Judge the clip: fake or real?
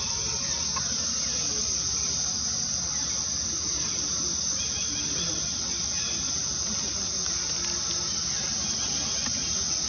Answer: real